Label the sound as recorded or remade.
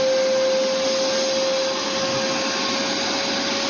recorded